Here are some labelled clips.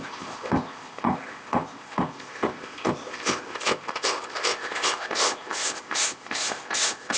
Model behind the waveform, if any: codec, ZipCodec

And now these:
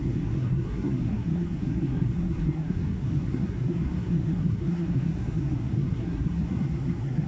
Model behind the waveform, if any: codec, SNAC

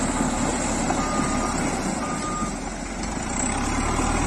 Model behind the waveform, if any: none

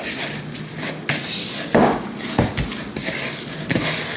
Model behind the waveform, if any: none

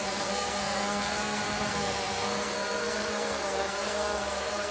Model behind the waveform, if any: codec, SNAC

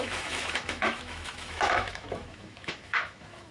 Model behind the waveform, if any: autoencoder, DAC-VAE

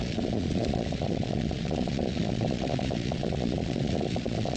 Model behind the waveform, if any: vocoder, Vocos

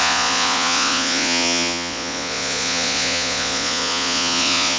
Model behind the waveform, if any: vocoder, Vocos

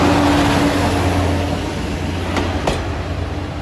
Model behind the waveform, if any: none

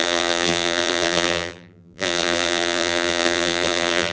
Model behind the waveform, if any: vocoder, BigVGAN v2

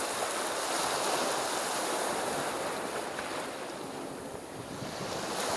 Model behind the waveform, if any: none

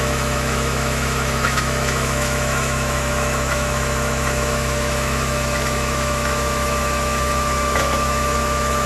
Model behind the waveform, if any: autoencoder, DAC-VAE